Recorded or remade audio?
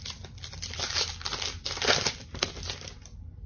recorded